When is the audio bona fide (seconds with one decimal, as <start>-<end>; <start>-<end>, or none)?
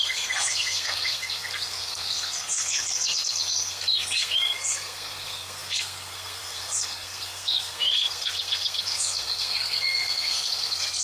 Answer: none